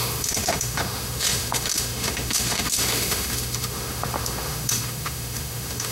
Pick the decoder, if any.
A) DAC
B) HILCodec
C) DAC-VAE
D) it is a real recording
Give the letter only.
C